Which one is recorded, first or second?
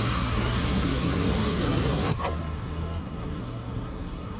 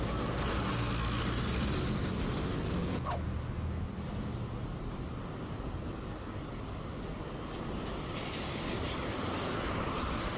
second